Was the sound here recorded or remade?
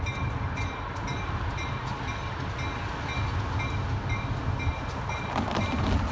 recorded